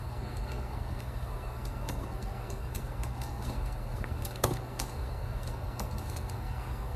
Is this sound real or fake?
fake